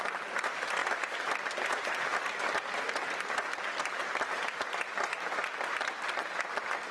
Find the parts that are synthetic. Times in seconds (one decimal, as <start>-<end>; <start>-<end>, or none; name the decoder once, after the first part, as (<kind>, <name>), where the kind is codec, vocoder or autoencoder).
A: none